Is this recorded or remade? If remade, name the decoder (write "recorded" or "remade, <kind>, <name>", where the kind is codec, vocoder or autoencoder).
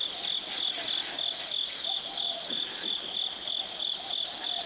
recorded